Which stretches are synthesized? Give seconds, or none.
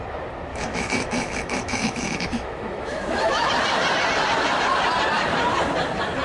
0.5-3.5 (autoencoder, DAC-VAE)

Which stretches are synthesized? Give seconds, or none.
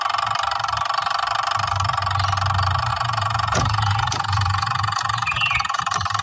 2.9-5.8 (vocoder, Vocos)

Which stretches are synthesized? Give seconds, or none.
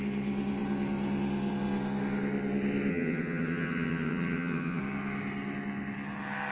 2.9-4.8 (vocoder, HiFi-GAN)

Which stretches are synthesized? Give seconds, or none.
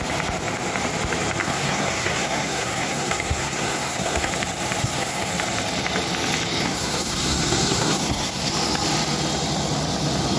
1.4-4.3 (codec, SNAC); 4.8-5.3; 6.6-8.5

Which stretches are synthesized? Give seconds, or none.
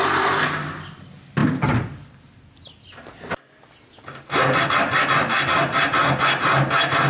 none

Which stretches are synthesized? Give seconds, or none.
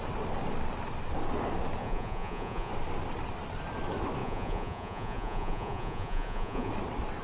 1.8-2.7 (vocoder, Vocos); 4.2-6.7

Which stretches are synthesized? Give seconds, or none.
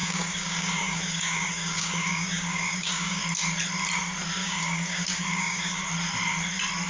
0.0-3.2 (codec, DAC); 4.4-5.8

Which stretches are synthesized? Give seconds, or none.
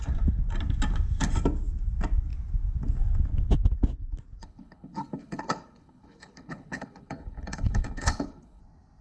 4.4-8.6 (codec, HILCodec)